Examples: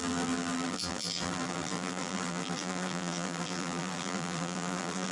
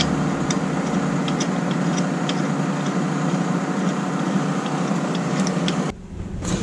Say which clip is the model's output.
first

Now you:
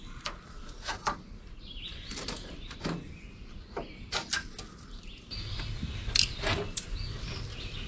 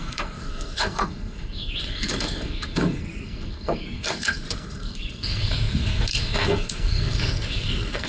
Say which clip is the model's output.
second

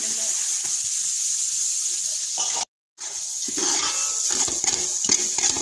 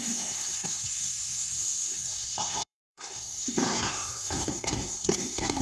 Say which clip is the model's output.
second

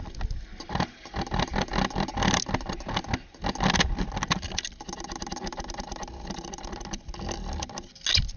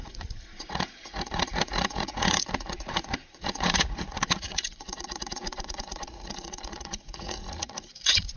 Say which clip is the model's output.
second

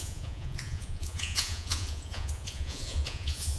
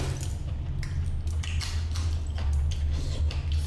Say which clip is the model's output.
first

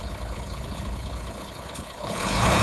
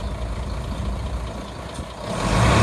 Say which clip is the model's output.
first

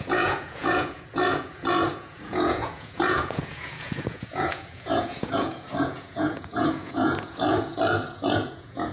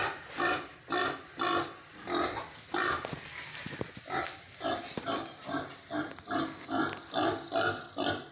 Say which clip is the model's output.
first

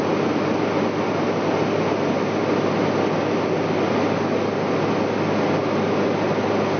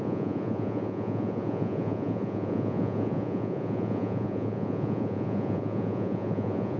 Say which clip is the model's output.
second